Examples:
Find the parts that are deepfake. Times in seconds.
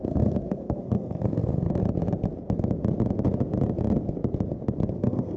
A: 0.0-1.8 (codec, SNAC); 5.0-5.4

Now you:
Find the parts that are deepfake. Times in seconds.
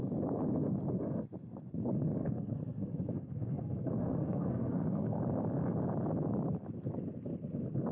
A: 2.2-5.2 (codec, SNAC)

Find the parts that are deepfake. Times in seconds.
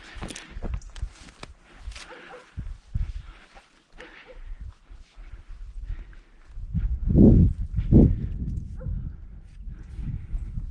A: none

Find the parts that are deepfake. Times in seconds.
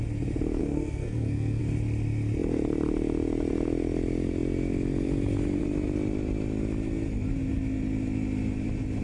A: 0.6-1.6 (codec, SNAC)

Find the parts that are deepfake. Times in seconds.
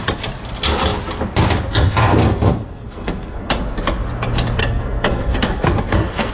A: 2.2-3.5 (codec, SNAC); 4.6-6.3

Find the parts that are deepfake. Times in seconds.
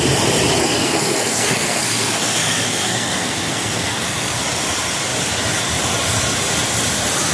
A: 0.6-4.4 (codec, SNAC)